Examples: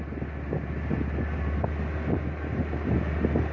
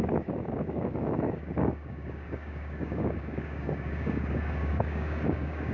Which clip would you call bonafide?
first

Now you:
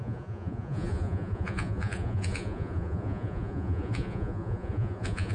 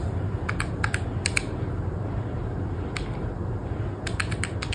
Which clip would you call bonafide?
second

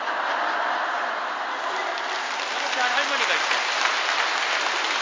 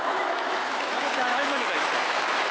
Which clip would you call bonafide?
first